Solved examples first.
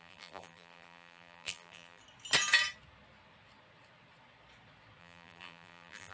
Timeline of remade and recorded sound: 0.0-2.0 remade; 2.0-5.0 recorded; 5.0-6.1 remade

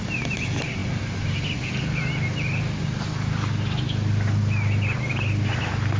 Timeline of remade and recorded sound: 0.0-6.0 recorded

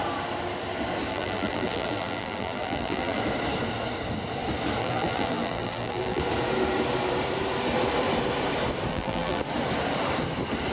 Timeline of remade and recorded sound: 0.0-1.1 recorded; 1.1-3.2 remade; 3.2-4.8 recorded; 4.8-6.2 remade; 6.2-8.9 recorded; 8.9-9.4 remade; 9.4-10.7 recorded

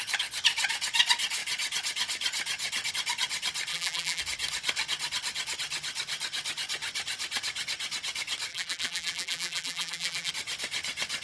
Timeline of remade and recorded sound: 0.0-3.7 recorded; 3.7-4.2 remade; 4.2-8.5 recorded; 8.5-10.3 remade; 10.3-11.2 recorded

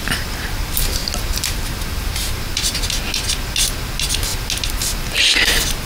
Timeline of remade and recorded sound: 0.0-2.1 recorded; 2.1-2.8 remade; 2.8-5.9 recorded